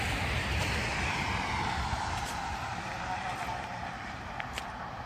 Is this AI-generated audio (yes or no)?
no